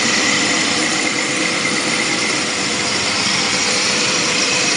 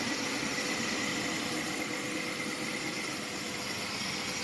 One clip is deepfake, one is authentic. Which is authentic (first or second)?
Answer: second